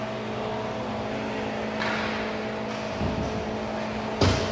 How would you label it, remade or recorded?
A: recorded